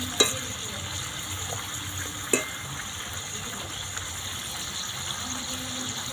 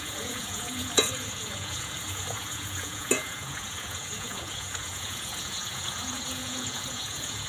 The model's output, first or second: second